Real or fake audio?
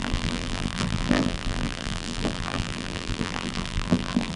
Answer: fake